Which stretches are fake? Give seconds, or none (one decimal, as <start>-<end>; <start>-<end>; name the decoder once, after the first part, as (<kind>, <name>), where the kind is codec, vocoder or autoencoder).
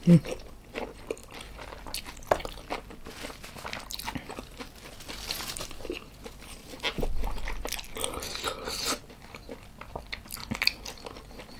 none